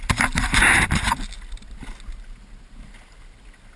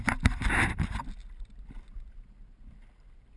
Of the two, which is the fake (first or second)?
second